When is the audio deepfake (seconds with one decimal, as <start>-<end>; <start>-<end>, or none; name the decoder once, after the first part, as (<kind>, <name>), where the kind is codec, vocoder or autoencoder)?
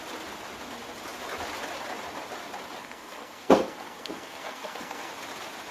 2.8-5.1 (codec, SNAC)